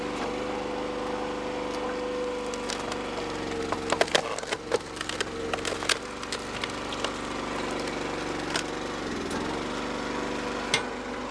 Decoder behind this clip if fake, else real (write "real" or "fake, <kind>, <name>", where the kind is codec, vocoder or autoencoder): real